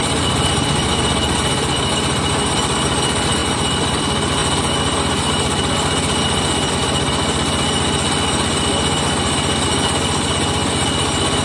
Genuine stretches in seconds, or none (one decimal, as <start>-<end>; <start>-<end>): 0.0-3.4; 4.0-11.4